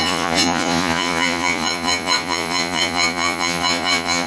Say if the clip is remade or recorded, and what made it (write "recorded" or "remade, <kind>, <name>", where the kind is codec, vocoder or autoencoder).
remade, vocoder, Vocos